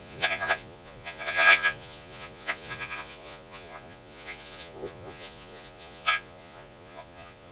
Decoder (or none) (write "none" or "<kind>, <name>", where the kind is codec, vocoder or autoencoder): vocoder, Vocos